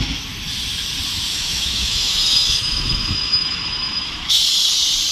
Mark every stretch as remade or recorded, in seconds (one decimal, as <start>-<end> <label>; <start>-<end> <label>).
0.0-1.3 recorded; 1.3-4.4 remade; 4.4-5.1 recorded